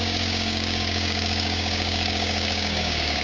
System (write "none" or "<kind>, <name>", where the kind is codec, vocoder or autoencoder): codec, DAC